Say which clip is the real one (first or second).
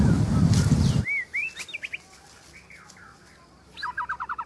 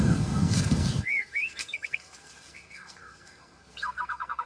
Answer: first